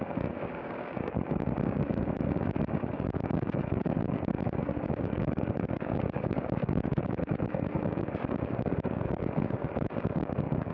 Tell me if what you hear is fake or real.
fake